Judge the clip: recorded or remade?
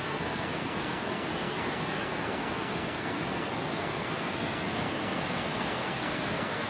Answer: remade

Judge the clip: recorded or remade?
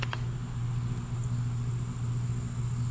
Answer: recorded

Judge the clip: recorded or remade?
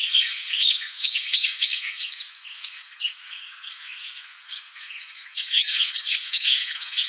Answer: remade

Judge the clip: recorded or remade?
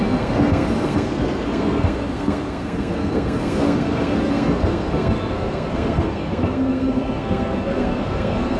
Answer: remade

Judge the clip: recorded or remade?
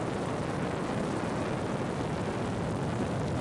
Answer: recorded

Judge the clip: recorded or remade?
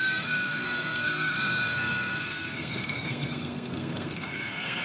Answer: remade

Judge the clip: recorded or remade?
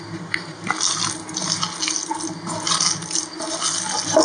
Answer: recorded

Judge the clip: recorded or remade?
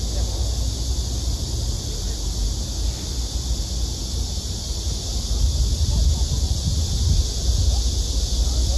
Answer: recorded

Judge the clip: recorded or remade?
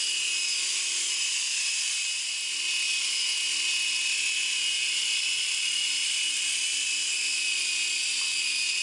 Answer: recorded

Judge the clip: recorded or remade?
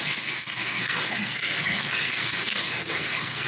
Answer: remade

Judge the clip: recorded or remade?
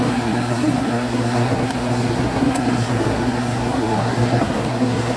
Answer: remade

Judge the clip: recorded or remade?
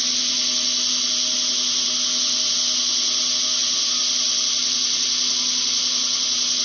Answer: recorded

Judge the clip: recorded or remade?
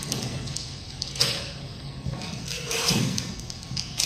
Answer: remade